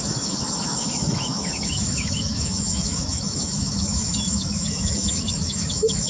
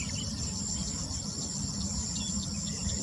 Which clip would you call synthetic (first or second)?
first